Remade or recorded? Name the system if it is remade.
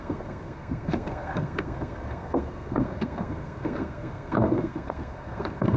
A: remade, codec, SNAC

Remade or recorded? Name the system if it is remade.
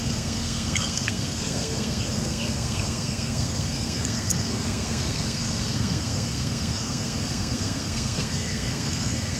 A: remade, codec, SNAC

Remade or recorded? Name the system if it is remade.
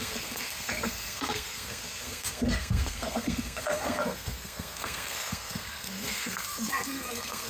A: remade, codec, SNAC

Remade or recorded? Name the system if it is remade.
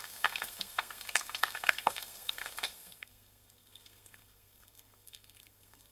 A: remade, codec, SNAC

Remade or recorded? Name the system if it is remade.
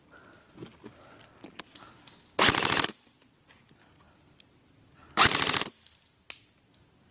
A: recorded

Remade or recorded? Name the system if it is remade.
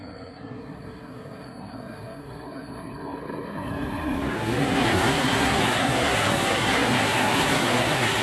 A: remade, codec, SNAC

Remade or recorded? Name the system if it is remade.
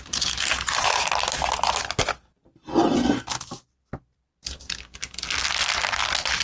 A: recorded